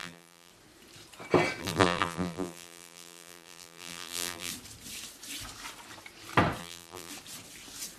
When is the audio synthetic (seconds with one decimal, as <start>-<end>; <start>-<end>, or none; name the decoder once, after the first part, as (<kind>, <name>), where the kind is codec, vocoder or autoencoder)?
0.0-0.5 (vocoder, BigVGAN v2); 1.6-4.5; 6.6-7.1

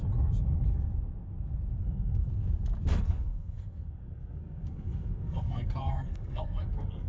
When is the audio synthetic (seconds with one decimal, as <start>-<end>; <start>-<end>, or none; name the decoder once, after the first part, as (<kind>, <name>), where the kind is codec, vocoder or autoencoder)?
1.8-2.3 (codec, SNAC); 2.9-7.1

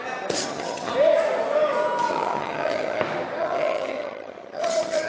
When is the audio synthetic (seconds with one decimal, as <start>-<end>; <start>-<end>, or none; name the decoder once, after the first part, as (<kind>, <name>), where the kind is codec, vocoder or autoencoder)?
0.4-0.9 (vocoder, HiFi-GAN); 2.1-3.0; 3.4-5.1

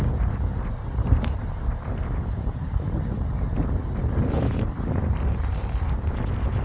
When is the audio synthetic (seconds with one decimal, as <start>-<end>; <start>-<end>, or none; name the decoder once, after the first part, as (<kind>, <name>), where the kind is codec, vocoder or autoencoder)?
none

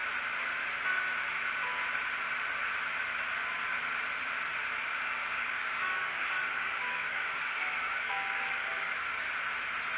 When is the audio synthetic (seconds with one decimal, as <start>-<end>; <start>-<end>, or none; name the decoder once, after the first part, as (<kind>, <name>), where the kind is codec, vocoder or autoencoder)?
5.2-9.3 (codec, DAC)

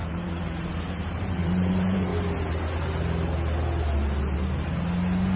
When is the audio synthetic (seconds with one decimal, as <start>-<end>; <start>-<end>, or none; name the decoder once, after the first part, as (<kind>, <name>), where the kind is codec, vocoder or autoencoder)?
0.0-2.1 (vocoder, BigVGAN v2)